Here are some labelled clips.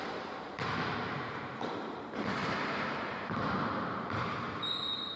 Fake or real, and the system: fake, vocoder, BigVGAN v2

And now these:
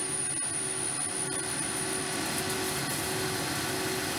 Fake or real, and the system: real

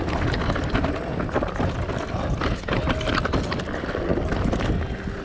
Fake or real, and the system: real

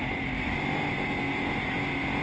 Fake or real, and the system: real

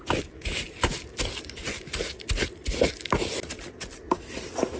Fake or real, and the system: real